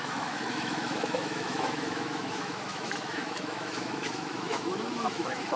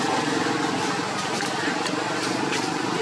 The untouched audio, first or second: second